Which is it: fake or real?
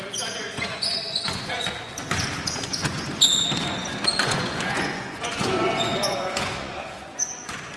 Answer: fake